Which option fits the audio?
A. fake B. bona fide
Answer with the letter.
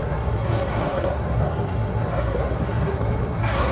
A